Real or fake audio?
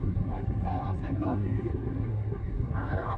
fake